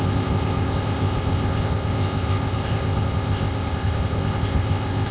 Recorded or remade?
remade